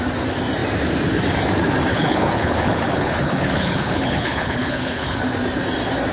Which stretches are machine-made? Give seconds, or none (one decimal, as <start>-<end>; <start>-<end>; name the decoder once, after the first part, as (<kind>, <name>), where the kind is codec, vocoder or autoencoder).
1.9-5.2 (codec, HILCodec)